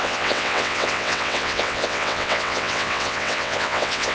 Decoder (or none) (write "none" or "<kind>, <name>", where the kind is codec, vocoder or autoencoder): vocoder, WaveNeXt